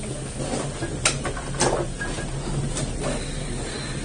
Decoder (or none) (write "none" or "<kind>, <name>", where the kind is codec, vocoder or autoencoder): none